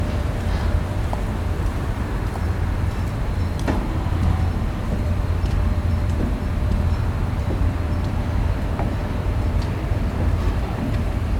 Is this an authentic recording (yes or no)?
no